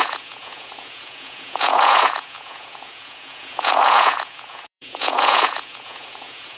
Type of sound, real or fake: fake